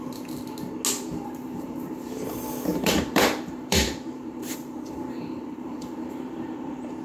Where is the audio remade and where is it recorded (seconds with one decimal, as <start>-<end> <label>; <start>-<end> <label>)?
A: 0.0-1.1 recorded; 1.1-2.3 remade; 2.3-2.7 recorded; 2.7-7.0 remade